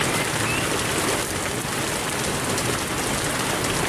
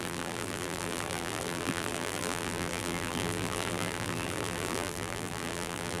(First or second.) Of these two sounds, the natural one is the first